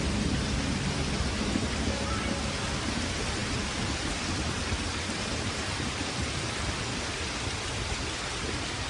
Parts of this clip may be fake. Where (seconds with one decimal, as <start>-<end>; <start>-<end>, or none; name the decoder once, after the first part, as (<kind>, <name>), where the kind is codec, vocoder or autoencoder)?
none